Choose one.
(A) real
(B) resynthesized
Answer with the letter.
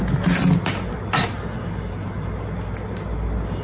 A